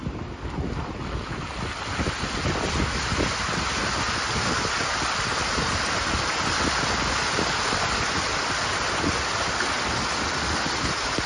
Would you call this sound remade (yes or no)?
no